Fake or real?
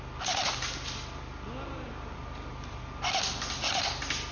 real